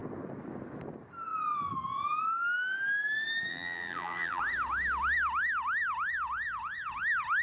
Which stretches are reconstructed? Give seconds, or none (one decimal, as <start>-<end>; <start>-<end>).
3.5-4.4